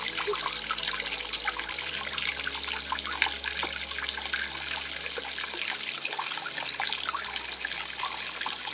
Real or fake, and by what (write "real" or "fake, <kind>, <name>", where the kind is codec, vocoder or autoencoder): real